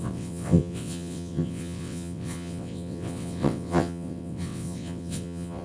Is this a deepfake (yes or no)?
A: yes